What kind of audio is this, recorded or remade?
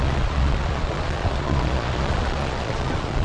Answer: remade